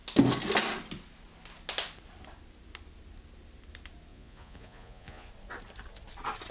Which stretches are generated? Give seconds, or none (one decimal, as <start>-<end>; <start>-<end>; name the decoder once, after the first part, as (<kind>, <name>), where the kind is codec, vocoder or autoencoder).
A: 4.1-5.3 (vocoder, Vocos)